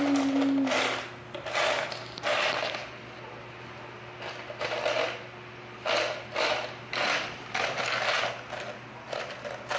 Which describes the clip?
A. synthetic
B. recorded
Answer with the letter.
B